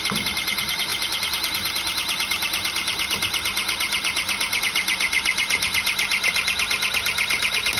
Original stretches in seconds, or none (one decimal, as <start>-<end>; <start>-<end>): 0.0-7.8